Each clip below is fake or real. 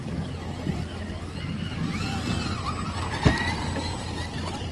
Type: real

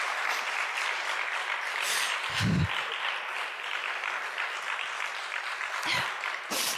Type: real